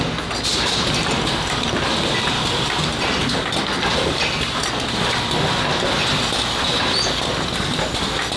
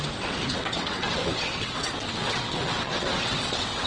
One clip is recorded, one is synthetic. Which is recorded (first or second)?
first